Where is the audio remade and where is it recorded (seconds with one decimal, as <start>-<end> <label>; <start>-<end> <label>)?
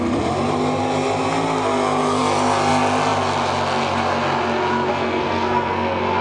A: 0.0-4.9 recorded; 4.9-6.2 remade